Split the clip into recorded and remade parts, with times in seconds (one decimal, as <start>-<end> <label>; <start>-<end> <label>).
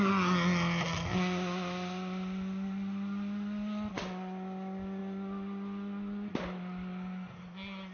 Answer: 0.0-7.9 recorded